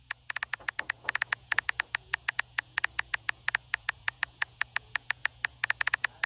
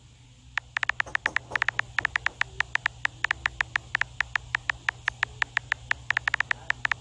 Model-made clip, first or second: first